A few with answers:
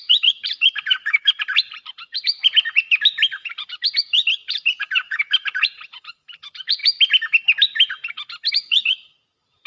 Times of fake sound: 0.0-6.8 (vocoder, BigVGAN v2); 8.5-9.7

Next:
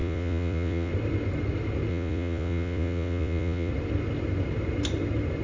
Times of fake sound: 0.0-0.9 (vocoder, Vocos); 1.9-3.7

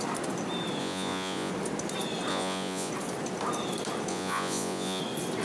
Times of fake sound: 0.8-1.5 (vocoder, Vocos); 2.3-2.9; 4.1-5.0